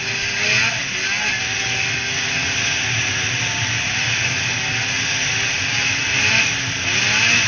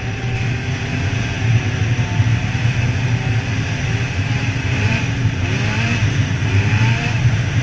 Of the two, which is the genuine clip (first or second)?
first